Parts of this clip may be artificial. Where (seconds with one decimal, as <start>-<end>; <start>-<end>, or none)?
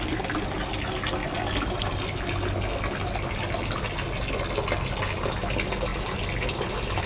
none